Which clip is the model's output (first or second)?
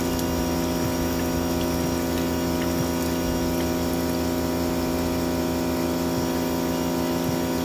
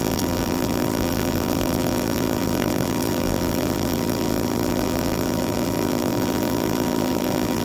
second